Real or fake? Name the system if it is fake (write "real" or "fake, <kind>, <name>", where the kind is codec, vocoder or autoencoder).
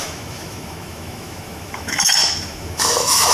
fake, autoencoder, DAC-VAE